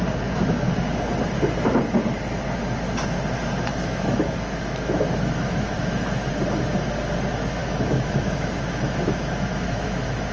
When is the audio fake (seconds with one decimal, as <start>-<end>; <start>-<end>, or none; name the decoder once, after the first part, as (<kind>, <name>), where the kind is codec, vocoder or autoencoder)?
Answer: 3.7-6.3 (autoencoder, DAC-VAE); 7.6-10.3